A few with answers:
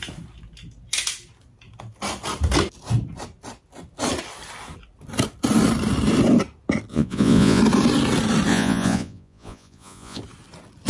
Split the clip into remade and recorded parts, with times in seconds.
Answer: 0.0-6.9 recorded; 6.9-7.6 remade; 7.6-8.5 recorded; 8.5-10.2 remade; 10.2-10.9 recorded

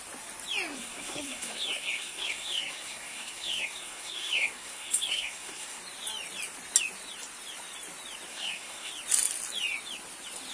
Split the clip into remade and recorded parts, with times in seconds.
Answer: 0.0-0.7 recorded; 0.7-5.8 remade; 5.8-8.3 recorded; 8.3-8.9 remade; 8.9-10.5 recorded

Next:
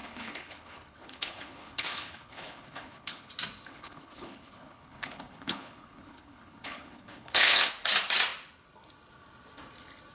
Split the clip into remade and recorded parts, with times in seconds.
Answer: 0.0-3.3 remade; 3.3-3.7 recorded; 3.7-7.7 remade; 7.7-10.1 recorded

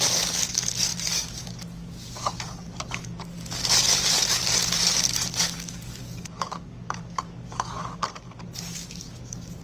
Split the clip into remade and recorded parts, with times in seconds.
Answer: 0.0-9.6 remade

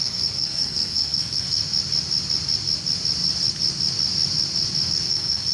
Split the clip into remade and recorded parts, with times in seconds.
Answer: 0.0-1.6 remade; 1.6-4.9 recorded; 4.9-5.5 remade

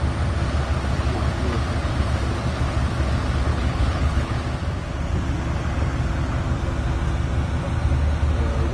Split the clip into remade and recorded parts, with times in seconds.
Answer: 0.0-3.5 recorded; 3.5-4.3 remade; 4.3-8.7 recorded

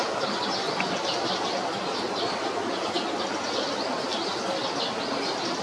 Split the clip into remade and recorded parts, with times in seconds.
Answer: 0.0-5.6 recorded

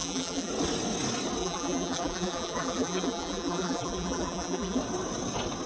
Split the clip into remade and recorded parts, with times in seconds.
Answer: 0.0-0.5 remade; 0.5-1.4 recorded; 1.4-4.8 remade; 4.8-5.7 recorded